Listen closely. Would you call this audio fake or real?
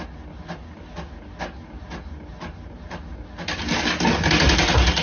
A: real